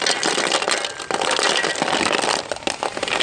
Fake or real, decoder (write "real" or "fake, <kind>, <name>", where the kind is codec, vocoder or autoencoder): real